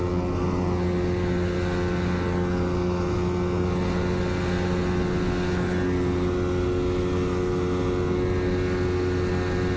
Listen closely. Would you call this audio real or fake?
real